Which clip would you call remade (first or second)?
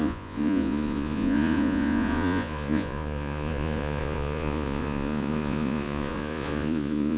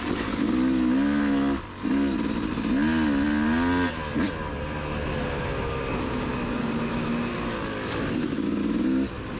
first